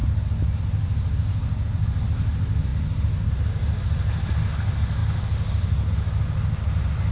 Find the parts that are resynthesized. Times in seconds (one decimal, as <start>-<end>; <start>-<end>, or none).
none